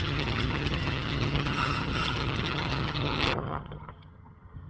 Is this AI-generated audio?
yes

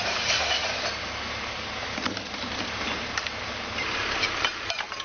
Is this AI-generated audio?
yes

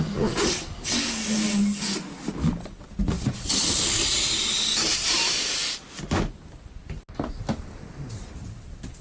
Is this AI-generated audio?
no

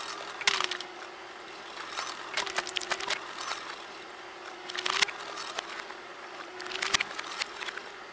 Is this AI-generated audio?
no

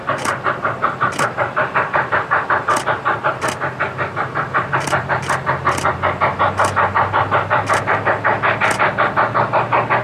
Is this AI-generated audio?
no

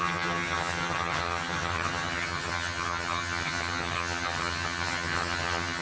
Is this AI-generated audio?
yes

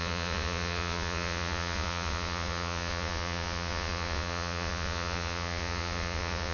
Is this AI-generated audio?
yes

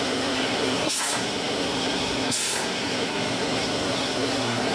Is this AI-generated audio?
yes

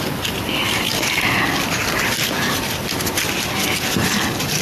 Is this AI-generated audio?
no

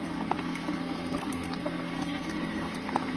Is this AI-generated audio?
yes